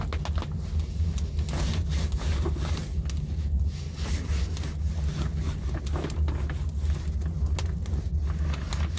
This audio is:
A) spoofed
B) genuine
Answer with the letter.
B